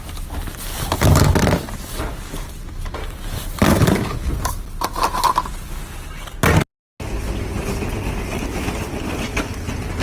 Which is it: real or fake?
real